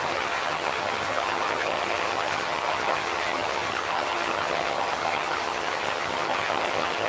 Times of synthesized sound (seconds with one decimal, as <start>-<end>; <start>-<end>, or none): 0.0-7.1